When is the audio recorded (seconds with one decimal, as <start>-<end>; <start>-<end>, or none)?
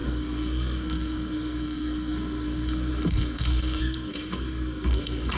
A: none